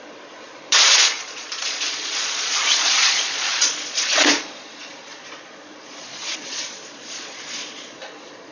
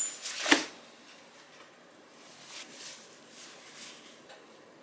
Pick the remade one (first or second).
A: first